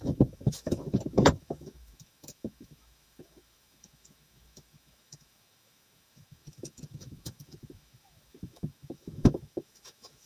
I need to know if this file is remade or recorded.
remade